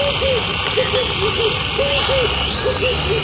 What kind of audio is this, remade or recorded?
recorded